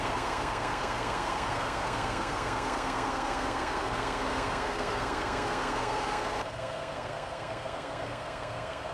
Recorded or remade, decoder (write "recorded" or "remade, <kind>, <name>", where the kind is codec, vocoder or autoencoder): remade, codec, SNAC